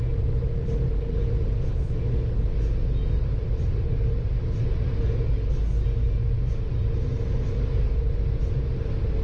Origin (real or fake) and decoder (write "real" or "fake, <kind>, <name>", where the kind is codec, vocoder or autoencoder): real